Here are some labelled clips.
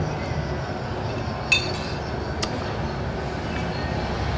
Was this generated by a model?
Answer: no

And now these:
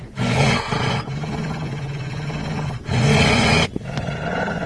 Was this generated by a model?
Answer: yes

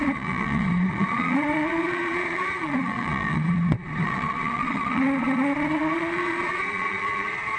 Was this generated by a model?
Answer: yes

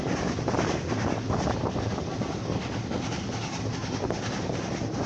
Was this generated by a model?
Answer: no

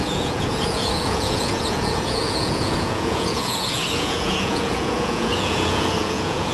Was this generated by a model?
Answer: yes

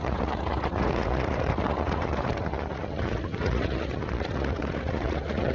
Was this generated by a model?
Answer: yes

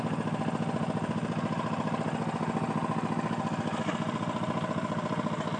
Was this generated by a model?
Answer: no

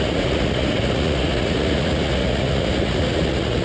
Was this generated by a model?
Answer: yes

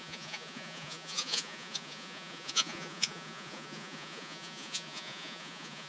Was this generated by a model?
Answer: yes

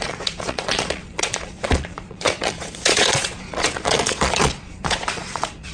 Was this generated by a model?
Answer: yes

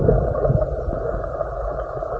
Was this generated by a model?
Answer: no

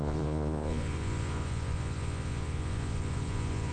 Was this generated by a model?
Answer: yes